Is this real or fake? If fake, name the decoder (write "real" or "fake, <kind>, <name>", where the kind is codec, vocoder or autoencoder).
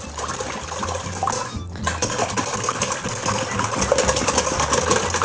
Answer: real